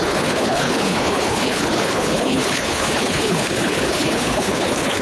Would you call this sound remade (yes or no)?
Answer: yes